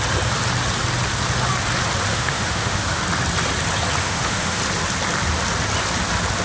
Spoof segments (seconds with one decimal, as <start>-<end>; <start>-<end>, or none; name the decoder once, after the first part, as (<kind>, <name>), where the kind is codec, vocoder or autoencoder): 2.1-3.0 (autoencoder, DAC-VAE); 4.0-4.6